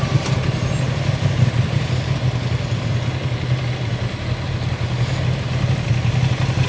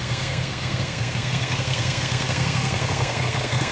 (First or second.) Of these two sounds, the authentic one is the first